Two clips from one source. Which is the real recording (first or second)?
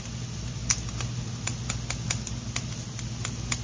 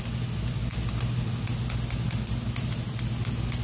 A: second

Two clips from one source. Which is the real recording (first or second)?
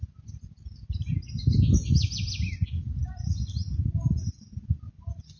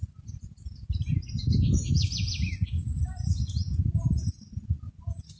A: first